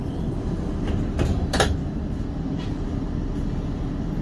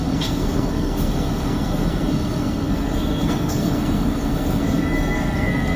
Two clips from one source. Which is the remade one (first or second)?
second